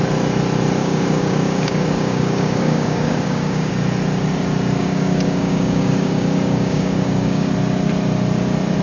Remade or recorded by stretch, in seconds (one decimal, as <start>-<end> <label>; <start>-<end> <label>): 0.0-0.8 recorded; 0.8-3.7 remade; 3.7-4.8 recorded; 4.8-7.5 remade; 7.5-8.8 recorded